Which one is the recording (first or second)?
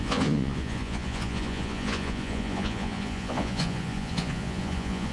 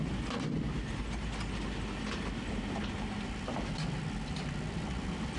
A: second